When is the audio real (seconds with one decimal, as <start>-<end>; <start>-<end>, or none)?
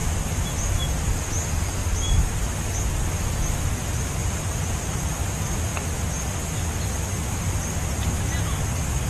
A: 1.3-1.8; 2.5-4.2; 5.0-9.1